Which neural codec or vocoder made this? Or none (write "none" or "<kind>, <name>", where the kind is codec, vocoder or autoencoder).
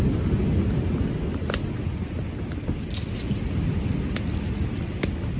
none